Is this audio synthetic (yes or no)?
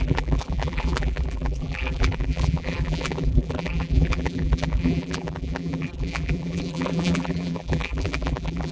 yes